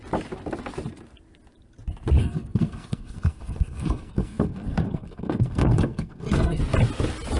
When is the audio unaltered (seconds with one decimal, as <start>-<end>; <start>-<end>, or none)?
0.0-2.2; 6.6-7.4

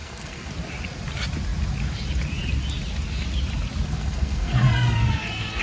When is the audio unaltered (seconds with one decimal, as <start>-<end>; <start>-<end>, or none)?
0.5-3.9